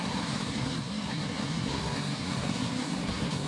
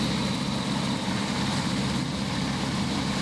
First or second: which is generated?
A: first